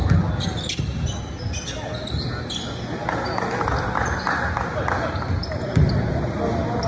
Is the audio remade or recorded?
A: recorded